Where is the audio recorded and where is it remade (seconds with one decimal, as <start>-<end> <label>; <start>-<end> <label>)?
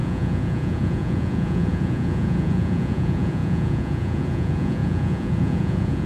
0.0-6.1 remade